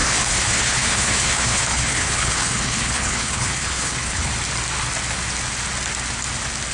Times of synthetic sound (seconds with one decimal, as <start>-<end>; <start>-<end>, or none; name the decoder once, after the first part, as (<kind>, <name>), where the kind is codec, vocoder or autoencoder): 0.0-4.3 (codec, HILCodec)